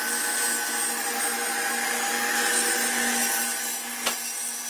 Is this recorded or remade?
recorded